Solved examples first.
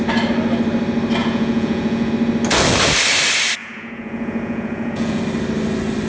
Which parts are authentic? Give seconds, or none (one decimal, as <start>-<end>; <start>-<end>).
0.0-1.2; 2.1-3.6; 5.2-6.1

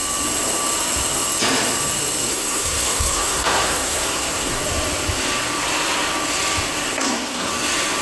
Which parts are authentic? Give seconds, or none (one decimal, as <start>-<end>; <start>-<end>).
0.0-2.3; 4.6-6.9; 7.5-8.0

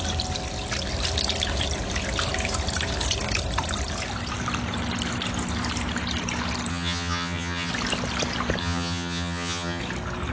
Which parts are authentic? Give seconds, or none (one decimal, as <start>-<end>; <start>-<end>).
0.0-6.7; 7.7-8.6; 9.8-10.3